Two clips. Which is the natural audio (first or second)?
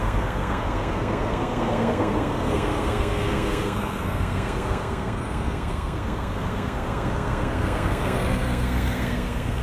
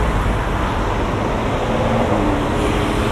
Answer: second